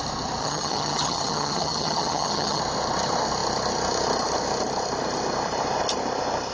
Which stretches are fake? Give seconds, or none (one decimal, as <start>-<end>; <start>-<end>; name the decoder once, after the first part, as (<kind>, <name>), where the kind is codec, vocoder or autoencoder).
0.4-2.6 (vocoder, HiFi-GAN)

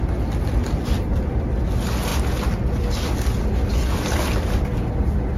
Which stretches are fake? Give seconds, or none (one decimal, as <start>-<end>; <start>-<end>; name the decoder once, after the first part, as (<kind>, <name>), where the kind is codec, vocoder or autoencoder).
none

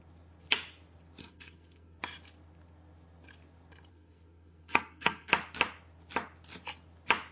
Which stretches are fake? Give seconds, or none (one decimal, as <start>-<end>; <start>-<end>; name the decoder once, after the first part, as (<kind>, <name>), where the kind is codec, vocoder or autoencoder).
1.2-2.0 (codec, SNAC); 3.9-5.3

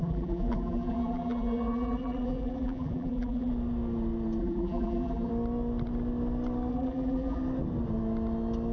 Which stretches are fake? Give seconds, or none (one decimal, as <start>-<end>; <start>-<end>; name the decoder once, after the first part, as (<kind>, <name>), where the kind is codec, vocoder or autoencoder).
0.0-3.5 (vocoder, BigVGAN v2); 4.4-5.3; 6.7-7.4

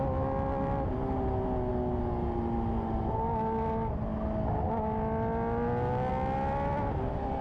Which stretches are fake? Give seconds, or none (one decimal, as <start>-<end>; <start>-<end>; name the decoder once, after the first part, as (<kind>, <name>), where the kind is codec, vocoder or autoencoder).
none

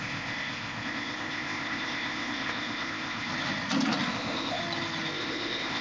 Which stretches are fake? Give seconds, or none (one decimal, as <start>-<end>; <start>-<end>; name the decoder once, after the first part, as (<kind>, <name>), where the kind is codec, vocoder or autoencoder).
0.0-3.3 (codec, ZipCodec); 4.1-4.6; 5.1-5.8

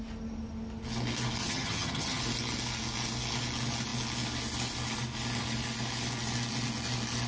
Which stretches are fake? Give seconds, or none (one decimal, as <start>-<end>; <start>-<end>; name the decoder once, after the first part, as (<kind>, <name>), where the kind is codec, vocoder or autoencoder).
1.4-2.2 (vocoder, HiFi-GAN)

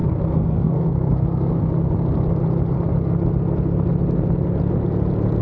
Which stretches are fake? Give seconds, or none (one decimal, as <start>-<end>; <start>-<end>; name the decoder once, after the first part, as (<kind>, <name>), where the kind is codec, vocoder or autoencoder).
0.0-1.6 (codec, SNAC)